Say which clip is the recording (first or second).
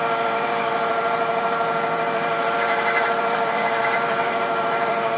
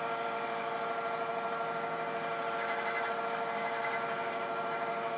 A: second